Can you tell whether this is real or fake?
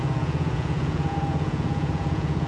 fake